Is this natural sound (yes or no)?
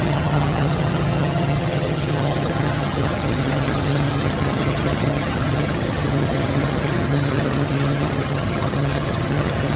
no